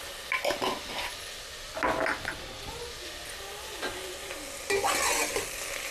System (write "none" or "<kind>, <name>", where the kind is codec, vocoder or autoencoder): none